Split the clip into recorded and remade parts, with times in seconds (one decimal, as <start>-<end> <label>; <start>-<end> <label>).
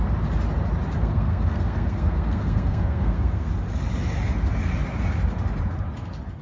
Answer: 0.0-1.0 recorded; 1.0-3.5 remade; 3.5-6.4 recorded